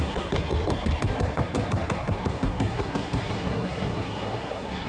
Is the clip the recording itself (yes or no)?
no